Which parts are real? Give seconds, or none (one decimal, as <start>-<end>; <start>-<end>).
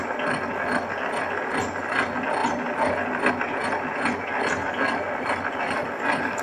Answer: 0.0-6.4